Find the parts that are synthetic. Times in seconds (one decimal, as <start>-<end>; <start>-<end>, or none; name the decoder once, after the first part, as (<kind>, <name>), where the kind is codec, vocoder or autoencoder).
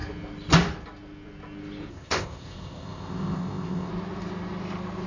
1.9-3.9 (codec, ZipCodec)